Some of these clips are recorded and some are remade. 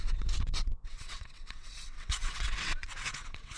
remade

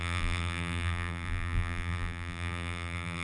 remade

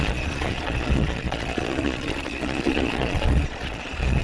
remade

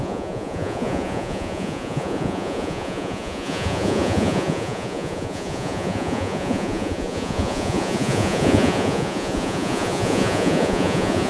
remade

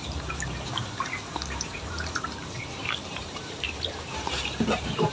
remade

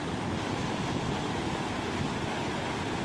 recorded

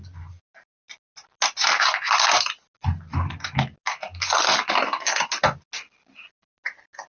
recorded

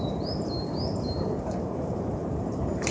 remade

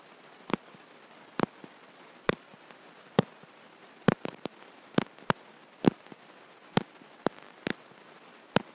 recorded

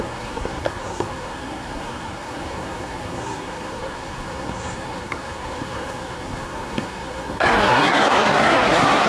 remade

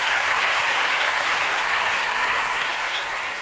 remade